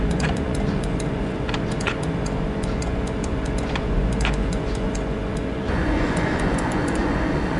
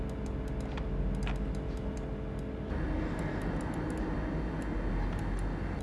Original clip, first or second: second